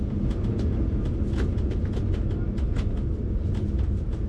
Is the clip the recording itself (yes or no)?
yes